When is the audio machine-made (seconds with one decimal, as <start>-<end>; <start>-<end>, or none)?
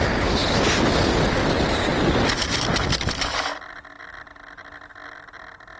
none